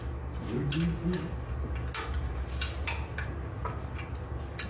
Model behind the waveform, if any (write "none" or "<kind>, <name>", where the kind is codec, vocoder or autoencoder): none